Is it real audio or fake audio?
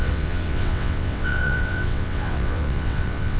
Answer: fake